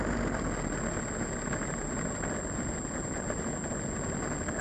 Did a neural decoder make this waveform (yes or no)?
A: no